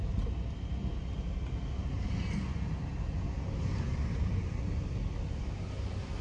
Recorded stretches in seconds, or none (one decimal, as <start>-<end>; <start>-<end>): 0.0-6.2